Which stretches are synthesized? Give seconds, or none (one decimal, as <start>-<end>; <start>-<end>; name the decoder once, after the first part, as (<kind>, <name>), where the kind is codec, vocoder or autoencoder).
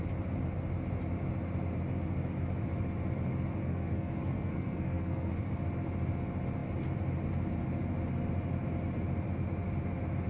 3.6-5.3 (codec, SNAC)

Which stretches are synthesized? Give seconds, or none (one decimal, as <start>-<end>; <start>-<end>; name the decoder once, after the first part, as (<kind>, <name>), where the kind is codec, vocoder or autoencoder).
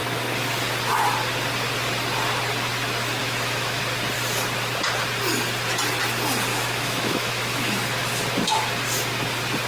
3.2-3.8 (autoencoder, DAC-VAE); 6.5-7.8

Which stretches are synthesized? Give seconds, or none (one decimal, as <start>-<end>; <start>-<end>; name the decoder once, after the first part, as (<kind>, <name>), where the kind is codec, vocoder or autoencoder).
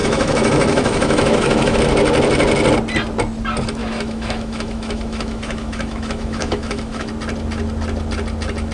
0.0-1.8 (autoencoder, DAC-VAE); 3.8-7.1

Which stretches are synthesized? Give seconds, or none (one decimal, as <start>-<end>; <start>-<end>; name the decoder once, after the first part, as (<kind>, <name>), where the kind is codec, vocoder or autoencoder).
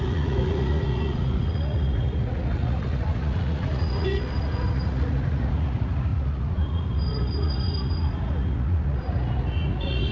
0.0-10.1 (vocoder, Vocos)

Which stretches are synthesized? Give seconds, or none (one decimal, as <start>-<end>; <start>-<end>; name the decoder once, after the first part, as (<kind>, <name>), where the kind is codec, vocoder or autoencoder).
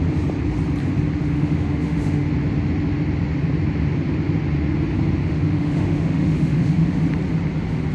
1.2-2.3 (autoencoder, DAC-VAE); 5.2-7.0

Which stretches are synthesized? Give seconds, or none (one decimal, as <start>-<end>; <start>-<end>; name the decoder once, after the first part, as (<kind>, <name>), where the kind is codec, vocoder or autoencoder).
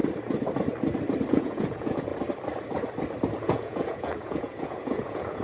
1.3-2.1 (vocoder, Vocos); 3.4-5.4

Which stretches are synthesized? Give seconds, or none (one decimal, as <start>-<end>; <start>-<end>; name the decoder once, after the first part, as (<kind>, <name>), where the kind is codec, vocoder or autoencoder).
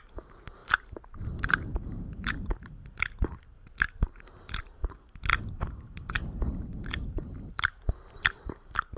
0.6-2.8 (vocoder, BigVGAN v2); 3.5-4.6; 5.3-8.6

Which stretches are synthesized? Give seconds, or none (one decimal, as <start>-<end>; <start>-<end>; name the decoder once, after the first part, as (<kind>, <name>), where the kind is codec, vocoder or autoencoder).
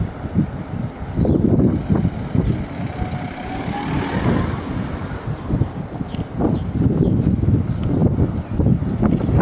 none